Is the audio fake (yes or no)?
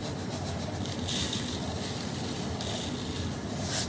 no